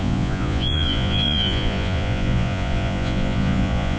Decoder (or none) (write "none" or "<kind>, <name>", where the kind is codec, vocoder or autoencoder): vocoder, Vocos